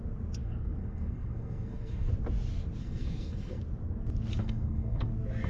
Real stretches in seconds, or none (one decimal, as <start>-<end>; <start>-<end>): 0.0-0.4; 2.1-2.8; 3.6-4.4; 5.1-5.5